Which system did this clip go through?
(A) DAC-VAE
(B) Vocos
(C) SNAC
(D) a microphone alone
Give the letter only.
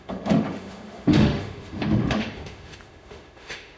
A